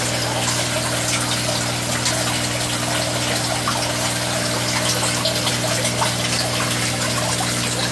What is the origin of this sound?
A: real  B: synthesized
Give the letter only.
A